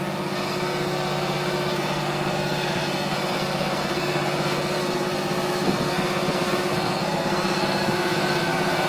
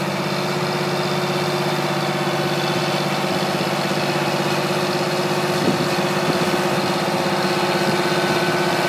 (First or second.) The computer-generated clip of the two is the first